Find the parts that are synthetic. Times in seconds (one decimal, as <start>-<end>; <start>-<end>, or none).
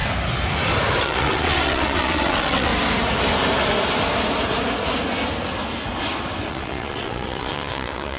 1.0-2.7; 6.5-8.2